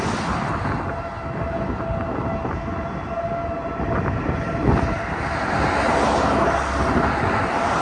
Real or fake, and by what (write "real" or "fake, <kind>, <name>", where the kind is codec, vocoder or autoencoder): real